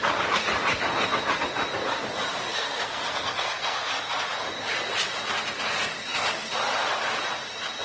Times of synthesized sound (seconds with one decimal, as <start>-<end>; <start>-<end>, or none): 2.5-3.9